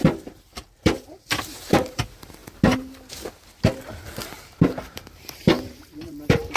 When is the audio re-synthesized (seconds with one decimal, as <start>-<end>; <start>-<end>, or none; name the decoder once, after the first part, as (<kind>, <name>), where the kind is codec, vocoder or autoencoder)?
0.0-2.4 (vocoder, BigVGAN v2); 4.8-6.6